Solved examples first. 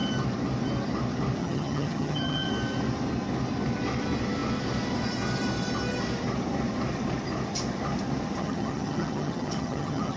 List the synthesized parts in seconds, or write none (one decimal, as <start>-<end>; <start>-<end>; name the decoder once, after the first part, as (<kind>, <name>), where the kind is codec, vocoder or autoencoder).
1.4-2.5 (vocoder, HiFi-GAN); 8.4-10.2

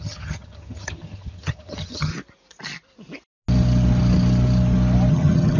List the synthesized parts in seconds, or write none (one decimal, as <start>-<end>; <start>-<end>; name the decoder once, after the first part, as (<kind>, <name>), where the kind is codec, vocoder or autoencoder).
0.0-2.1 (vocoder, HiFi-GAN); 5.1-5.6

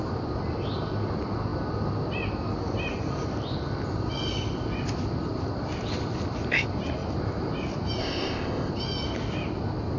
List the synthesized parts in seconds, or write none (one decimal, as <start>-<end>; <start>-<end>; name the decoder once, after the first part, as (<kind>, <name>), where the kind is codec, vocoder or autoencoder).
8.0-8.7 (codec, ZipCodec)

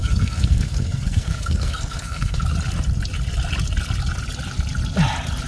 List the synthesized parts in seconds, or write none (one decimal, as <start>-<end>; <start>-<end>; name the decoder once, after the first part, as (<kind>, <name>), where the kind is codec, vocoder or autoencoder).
0.0-2.4 (codec, SNAC)

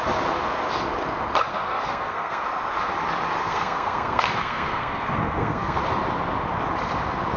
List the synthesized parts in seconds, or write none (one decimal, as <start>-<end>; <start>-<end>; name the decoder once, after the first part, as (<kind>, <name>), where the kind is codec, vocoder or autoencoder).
1.5-2.4 (codec, SNAC); 3.4-5.8

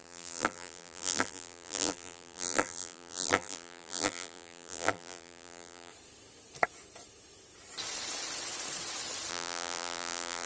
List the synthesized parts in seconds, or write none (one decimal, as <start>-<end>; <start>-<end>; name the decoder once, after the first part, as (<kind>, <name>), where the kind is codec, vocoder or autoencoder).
0.0-5.9 (vocoder, BigVGAN v2); 9.3-10.5

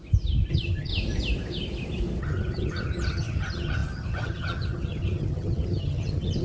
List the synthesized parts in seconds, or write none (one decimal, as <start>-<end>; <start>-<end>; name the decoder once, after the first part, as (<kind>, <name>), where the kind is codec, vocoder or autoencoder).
0.5-0.9 (vocoder, HiFi-GAN); 2.2-6.4

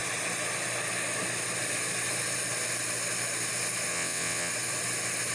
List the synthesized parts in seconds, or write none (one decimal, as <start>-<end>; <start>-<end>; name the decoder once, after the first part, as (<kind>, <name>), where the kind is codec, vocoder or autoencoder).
3.9-4.5 (vocoder, WaveNeXt)